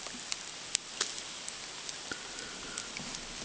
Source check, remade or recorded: recorded